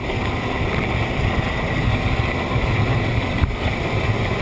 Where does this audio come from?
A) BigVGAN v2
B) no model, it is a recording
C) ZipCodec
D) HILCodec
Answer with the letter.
B